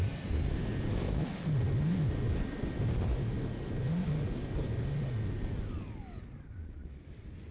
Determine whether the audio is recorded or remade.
recorded